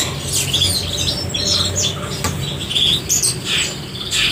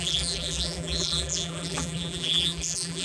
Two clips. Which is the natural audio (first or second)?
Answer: first